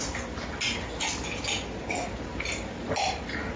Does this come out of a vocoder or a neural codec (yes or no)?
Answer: no